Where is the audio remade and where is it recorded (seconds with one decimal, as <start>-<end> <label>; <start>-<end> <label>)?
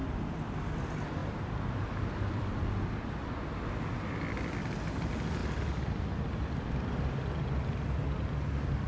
0.0-0.6 remade; 0.6-1.2 recorded; 1.2-2.9 remade; 2.9-5.4 recorded; 5.4-7.3 remade; 7.3-8.9 recorded